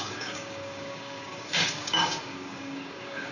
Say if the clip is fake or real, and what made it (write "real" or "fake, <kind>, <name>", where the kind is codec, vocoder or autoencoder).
fake, codec, DAC